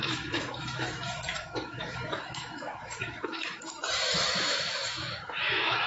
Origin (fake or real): fake